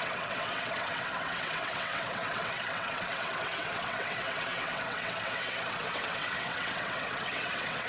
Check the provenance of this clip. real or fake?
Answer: fake